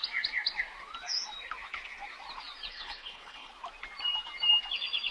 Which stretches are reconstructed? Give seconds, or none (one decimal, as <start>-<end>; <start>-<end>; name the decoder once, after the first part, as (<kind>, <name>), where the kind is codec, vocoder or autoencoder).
2.7-3.5 (codec, HILCodec)